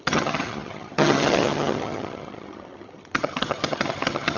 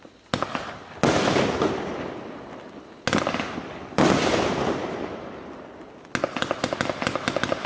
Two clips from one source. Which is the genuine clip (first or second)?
second